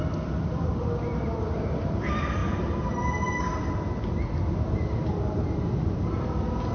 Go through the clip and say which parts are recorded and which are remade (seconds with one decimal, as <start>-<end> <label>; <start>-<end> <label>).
0.0-6.7 recorded